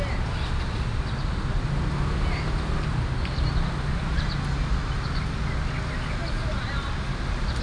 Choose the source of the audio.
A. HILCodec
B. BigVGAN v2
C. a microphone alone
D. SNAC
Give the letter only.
C